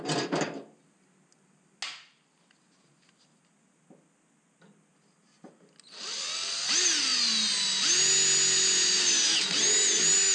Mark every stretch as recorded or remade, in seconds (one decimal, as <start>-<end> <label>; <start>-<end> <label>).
0.0-10.3 recorded